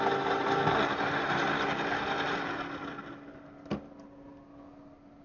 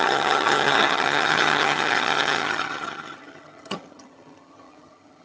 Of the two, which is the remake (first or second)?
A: second